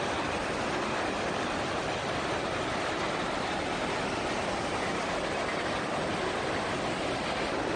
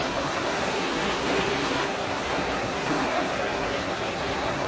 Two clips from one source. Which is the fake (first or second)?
second